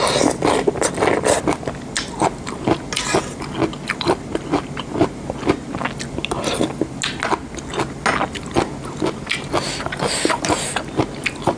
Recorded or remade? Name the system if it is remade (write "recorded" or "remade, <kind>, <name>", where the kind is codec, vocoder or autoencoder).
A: recorded